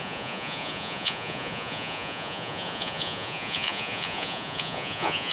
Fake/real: fake